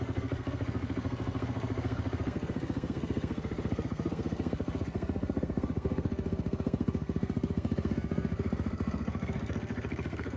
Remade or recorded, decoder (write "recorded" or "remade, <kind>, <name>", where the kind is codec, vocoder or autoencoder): remade, codec, SNAC